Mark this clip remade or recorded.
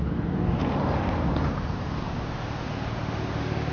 recorded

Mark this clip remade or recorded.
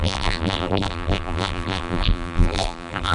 remade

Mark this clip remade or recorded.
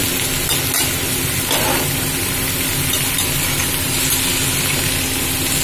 recorded